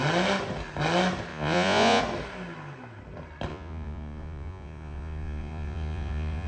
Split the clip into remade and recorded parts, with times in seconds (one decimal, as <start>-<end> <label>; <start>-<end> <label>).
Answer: 0.0-1.3 recorded; 1.3-2.0 remade; 2.0-3.5 recorded; 3.5-6.5 remade